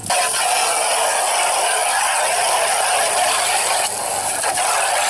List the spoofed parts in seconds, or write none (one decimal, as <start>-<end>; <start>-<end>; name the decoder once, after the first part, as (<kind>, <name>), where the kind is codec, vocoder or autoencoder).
none